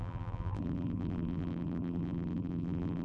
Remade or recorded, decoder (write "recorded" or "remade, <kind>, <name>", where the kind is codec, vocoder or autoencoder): remade, vocoder, BigVGAN v2